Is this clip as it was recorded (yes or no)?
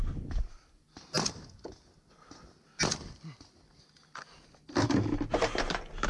yes